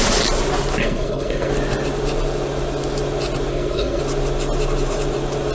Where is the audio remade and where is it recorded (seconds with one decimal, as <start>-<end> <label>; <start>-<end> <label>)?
0.0-0.8 recorded; 0.8-1.5 remade; 1.5-3.5 recorded; 3.5-4.0 remade; 4.0-5.5 recorded